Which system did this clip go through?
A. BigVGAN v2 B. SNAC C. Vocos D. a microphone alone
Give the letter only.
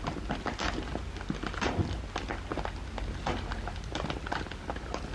D